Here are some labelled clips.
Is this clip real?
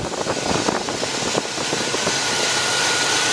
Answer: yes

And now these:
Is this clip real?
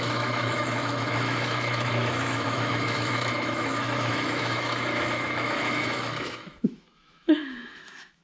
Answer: no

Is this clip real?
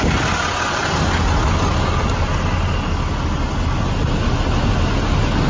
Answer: yes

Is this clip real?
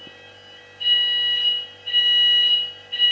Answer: yes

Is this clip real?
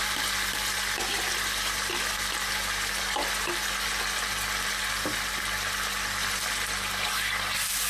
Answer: yes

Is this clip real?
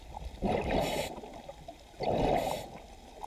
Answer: yes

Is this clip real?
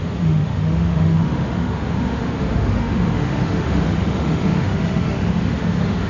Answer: no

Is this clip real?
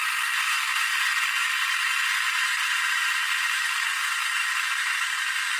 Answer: yes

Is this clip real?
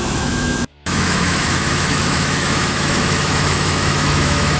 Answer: no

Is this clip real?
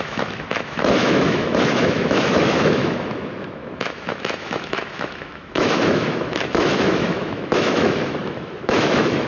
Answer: no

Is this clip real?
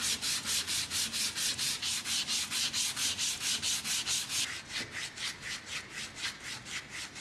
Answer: yes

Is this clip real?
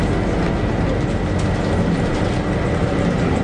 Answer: yes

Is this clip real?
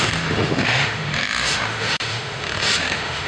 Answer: no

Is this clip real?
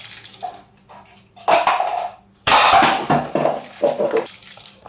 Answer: yes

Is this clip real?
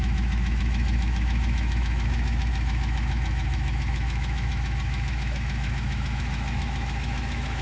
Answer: no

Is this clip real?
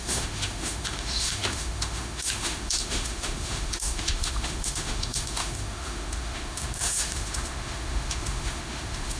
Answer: no